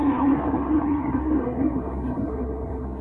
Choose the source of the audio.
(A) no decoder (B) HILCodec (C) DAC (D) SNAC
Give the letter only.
D